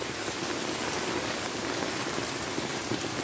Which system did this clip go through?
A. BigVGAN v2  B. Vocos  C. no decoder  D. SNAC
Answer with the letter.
C